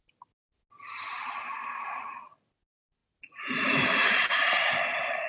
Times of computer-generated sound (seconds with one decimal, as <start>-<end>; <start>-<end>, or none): none